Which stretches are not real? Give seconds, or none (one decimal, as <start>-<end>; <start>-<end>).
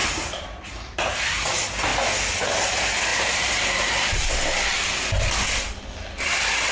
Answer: 0.0-0.6; 3.1-4.3